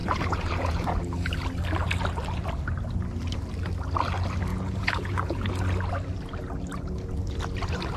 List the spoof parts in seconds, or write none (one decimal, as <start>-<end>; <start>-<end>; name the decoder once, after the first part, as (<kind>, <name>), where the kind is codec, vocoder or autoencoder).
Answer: 0.0-1.0 (vocoder, Vocos); 4.5-5.5